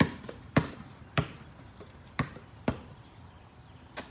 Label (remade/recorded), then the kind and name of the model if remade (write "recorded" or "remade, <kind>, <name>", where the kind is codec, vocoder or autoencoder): remade, vocoder, BigVGAN v2